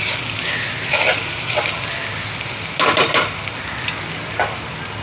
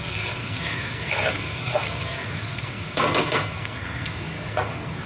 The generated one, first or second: second